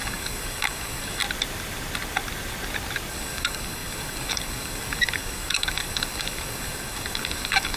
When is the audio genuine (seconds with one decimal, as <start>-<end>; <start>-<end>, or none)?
1.2-3.1